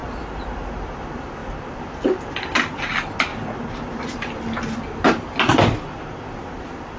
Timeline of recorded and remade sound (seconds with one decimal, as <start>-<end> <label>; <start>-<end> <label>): 0.0-0.7 remade; 0.7-1.4 recorded; 1.4-2.0 remade; 2.0-3.3 recorded; 3.3-4.3 remade; 4.3-5.5 recorded; 5.5-6.1 remade; 6.1-7.0 recorded